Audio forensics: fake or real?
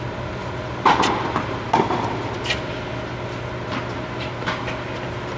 real